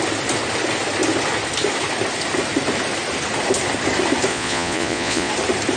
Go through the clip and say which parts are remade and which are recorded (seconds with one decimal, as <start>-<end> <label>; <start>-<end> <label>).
0.0-4.3 recorded; 4.3-5.3 remade; 5.3-5.8 recorded